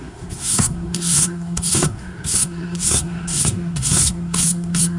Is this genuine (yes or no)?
no